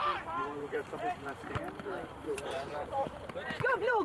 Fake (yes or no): yes